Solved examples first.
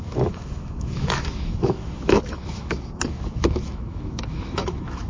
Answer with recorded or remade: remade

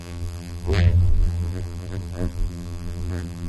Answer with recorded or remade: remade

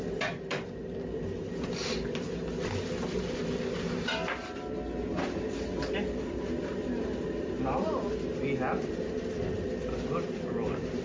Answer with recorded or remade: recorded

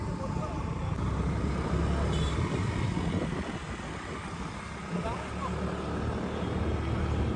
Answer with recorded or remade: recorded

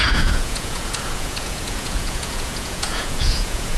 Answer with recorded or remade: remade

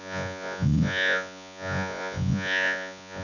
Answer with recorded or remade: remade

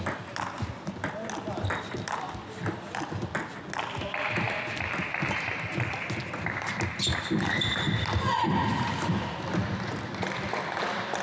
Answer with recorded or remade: recorded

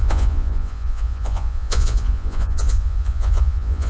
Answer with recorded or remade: remade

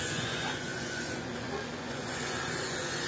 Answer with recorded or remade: remade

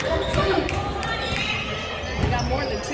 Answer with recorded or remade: recorded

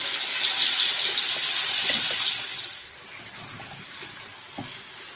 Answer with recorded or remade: recorded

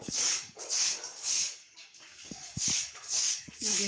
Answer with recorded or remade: remade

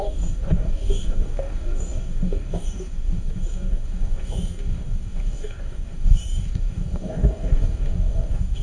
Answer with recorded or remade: remade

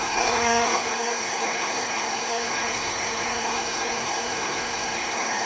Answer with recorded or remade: remade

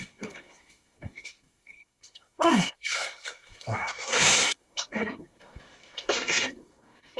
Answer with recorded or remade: remade